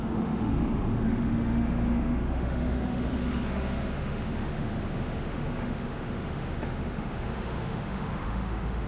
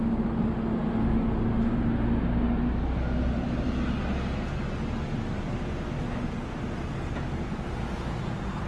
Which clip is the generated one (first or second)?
first